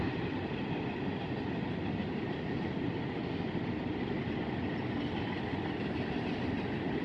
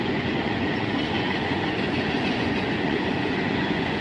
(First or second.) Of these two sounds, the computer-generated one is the second